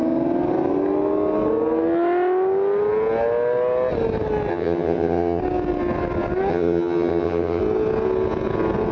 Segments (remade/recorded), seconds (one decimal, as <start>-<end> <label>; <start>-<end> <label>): 0.0-4.5 recorded; 4.5-5.4 remade; 5.4-6.5 recorded; 6.5-7.6 remade; 7.6-8.9 recorded